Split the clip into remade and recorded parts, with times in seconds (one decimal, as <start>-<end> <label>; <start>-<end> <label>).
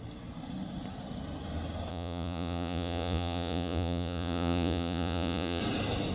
0.0-1.9 recorded; 1.9-5.6 remade; 5.6-6.1 recorded